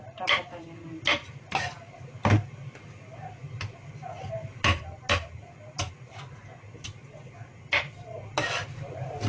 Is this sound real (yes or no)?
yes